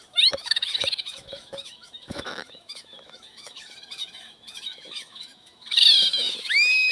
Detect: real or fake fake